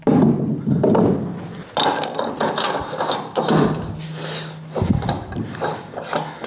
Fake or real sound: real